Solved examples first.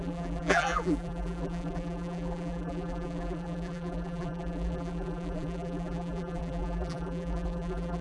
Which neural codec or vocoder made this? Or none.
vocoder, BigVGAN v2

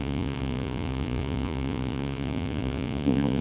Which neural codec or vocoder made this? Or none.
vocoder, Vocos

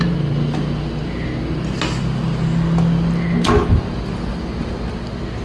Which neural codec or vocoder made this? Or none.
none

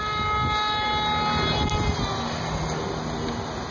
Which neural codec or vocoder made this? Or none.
none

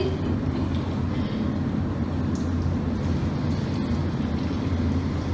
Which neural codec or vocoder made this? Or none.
none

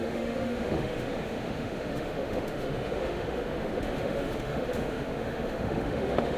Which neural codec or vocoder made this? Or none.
autoencoder, DAC-VAE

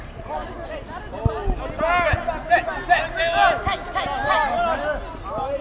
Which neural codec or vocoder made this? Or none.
none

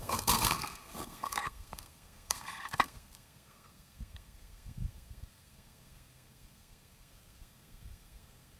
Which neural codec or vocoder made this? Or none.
codec, SNAC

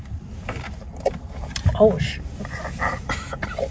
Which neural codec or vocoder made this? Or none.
none